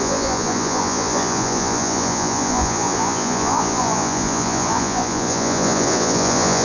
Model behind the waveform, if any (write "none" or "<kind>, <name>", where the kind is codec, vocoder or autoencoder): vocoder, Vocos